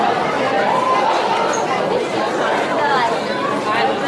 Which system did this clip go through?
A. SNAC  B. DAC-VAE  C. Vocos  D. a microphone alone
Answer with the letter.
D